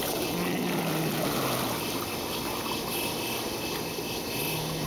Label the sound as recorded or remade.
recorded